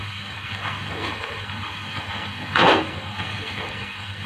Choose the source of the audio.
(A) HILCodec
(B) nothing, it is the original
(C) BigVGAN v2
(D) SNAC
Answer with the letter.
D